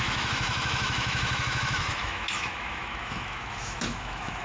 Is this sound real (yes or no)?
no